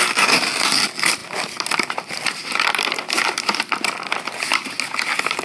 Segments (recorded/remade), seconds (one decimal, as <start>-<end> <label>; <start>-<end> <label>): 0.0-1.2 recorded; 1.2-4.4 remade; 4.4-5.4 recorded